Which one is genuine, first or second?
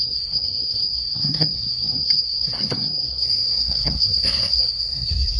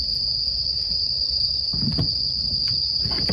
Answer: second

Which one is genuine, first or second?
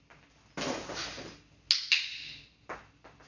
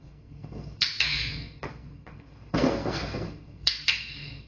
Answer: first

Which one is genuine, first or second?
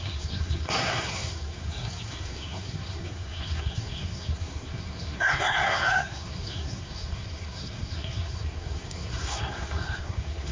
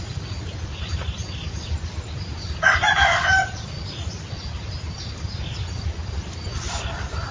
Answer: second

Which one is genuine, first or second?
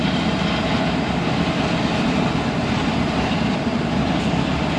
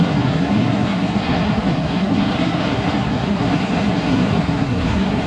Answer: first